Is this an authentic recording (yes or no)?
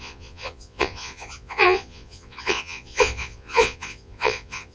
no